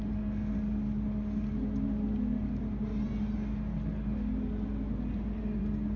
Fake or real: real